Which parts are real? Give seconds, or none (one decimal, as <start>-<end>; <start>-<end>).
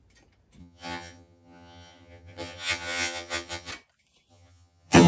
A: 0.0-0.6; 3.7-4.3